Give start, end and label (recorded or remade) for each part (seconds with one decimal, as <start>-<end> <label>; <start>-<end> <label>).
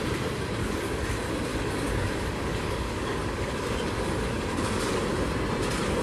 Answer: 0.0-0.6 recorded; 0.6-1.1 remade; 1.1-1.5 recorded; 1.5-5.1 remade; 5.1-6.0 recorded